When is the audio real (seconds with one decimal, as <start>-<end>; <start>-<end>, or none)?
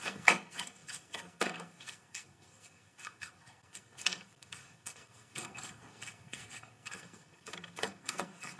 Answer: none